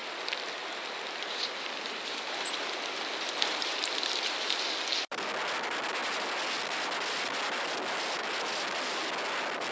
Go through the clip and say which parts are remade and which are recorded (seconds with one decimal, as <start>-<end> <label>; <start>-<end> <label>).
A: 0.0-4.5 remade; 4.5-9.7 recorded